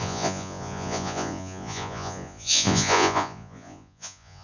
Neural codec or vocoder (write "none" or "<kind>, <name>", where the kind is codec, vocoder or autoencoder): vocoder, Vocos